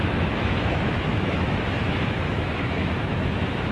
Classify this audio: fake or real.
fake